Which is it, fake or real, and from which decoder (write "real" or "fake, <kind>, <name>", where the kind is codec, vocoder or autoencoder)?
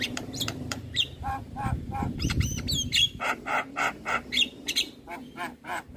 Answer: fake, vocoder, BigVGAN v2